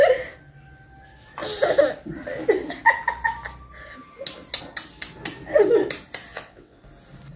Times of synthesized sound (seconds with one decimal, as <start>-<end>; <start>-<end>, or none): 6.3-6.8